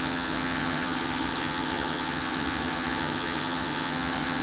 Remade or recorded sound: remade